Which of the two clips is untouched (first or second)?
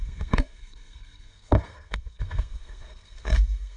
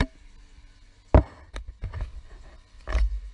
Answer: second